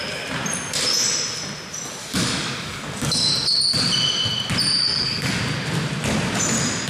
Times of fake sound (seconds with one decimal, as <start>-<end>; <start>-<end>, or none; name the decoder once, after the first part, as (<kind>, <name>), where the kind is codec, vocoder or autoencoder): 2.0-3.3 (codec, DAC); 4.8-5.4